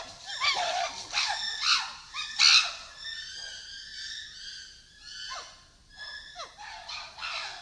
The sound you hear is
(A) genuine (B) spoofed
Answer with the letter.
A